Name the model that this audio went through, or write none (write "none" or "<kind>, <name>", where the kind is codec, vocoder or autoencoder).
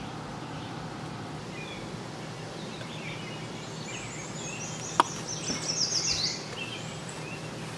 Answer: none